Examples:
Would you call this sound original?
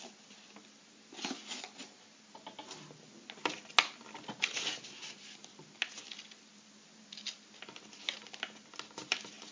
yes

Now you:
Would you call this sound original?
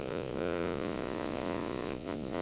no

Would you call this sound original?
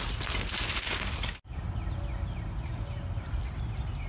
yes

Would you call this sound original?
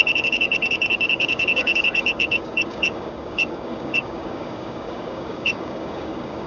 no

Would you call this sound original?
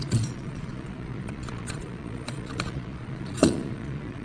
no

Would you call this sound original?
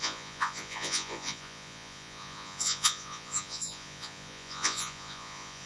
no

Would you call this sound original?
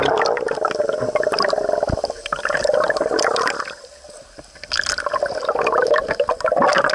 yes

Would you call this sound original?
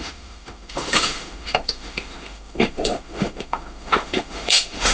no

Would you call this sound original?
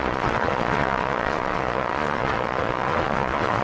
no